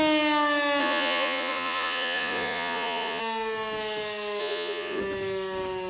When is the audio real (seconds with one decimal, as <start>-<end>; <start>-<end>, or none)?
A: 0.0-0.8; 3.2-4.4; 5.0-5.9